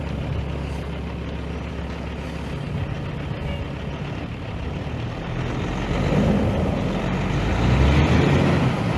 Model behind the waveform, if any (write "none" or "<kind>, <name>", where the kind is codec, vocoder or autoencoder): none